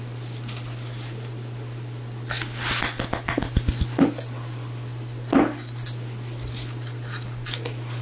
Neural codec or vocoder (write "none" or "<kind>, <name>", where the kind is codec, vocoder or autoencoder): none